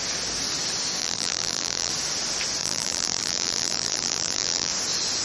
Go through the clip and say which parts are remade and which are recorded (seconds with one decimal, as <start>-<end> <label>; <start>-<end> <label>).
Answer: 0.0-1.0 recorded; 1.0-1.9 remade; 1.9-2.6 recorded; 2.6-4.7 remade; 4.7-5.2 recorded